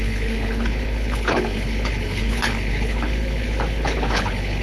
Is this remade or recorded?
remade